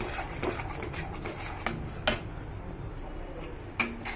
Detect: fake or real real